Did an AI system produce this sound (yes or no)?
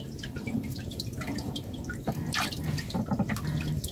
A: yes